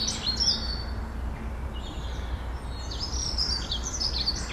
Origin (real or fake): real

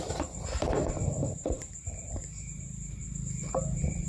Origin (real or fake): fake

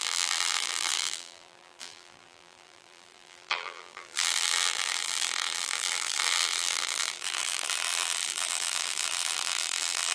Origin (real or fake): fake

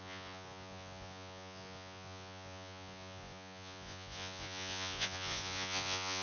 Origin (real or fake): fake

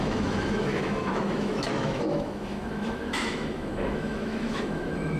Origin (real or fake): fake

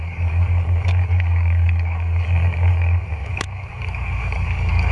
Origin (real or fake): fake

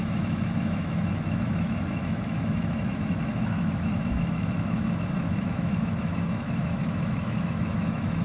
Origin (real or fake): fake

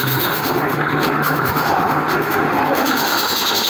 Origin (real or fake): fake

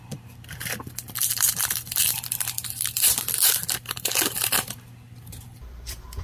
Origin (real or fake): fake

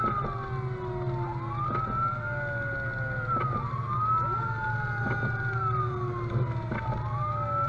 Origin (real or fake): real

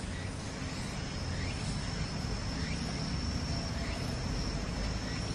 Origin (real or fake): real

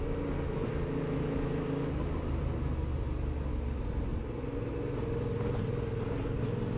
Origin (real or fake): real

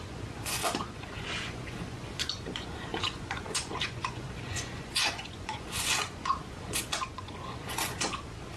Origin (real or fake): fake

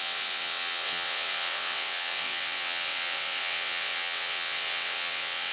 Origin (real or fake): fake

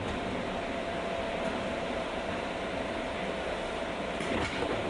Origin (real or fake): fake